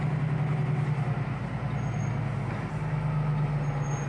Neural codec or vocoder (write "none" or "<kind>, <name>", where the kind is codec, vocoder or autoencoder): none